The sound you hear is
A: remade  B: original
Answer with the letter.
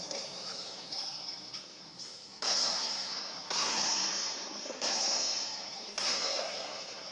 A